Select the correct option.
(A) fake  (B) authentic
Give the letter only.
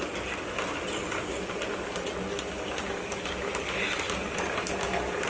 B